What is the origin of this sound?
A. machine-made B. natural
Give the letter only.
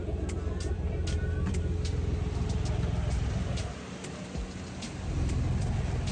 B